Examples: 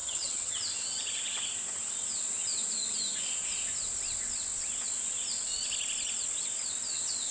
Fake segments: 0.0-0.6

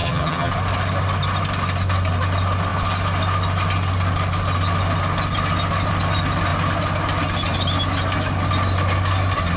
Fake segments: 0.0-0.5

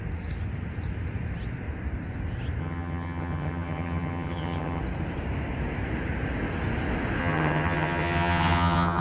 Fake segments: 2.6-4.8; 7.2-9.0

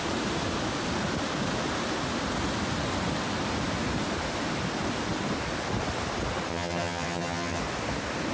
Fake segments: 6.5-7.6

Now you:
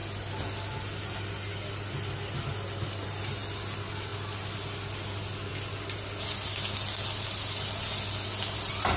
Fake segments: none